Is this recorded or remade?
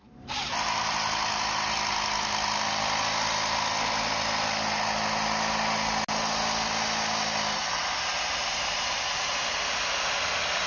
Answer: recorded